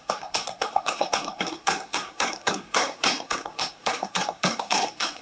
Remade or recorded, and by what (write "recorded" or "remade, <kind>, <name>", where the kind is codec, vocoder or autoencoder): remade, codec, SNAC